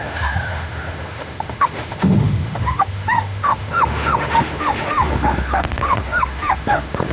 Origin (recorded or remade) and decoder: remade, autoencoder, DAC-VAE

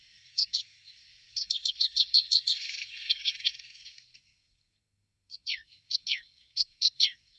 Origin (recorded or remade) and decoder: remade, codec, SNAC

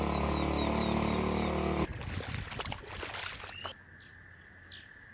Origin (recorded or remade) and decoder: recorded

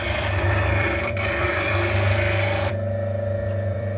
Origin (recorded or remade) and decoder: remade, vocoder, BigVGAN v2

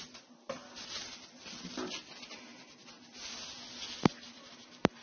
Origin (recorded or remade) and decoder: recorded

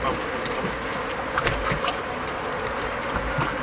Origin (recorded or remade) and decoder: recorded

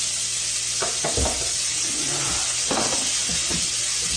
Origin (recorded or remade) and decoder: recorded